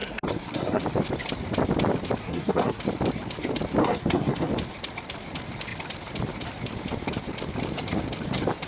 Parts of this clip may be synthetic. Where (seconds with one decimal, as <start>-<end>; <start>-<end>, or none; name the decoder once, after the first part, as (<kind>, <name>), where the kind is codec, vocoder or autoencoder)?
0.0-0.8 (codec, SNAC); 2.2-2.8; 3.8-4.5